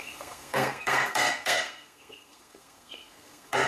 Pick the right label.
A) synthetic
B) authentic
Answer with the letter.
A